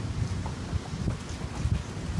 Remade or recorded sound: recorded